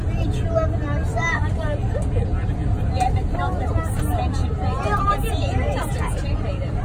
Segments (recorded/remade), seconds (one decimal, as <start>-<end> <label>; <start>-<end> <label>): 0.0-6.8 recorded